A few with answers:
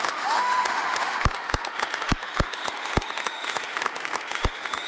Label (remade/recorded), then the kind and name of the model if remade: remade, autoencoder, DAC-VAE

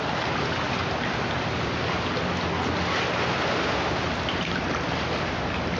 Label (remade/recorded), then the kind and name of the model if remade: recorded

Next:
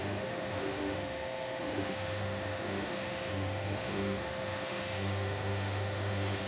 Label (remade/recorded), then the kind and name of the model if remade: remade, autoencoder, DAC-VAE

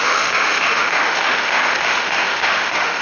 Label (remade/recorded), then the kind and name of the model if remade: remade, autoencoder, DAC-VAE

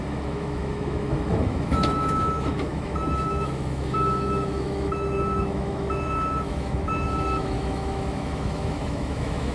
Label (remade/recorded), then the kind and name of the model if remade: remade, autoencoder, DAC-VAE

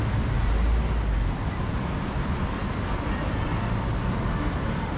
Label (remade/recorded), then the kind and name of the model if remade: recorded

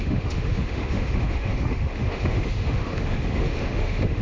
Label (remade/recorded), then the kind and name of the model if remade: remade, autoencoder, DAC-VAE